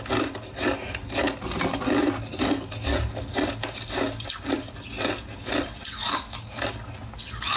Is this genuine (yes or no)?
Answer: yes